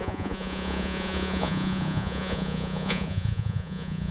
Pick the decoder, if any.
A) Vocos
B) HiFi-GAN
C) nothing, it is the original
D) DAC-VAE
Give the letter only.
A